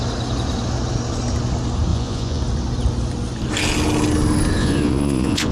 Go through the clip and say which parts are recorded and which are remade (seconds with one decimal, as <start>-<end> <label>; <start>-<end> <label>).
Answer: 0.0-1.9 recorded; 1.9-2.4 remade; 2.4-4.6 recorded; 4.6-5.5 remade